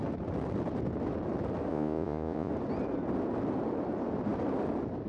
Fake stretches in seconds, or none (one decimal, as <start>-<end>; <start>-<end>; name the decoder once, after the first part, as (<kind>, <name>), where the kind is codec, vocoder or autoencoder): 1.7-2.5 (vocoder, Vocos)